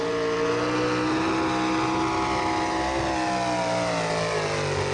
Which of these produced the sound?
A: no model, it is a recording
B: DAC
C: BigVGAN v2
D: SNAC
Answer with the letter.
A